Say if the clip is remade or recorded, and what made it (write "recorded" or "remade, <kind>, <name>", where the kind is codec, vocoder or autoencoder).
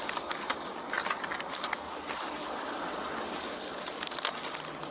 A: recorded